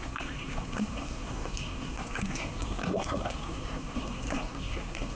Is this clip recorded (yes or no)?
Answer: no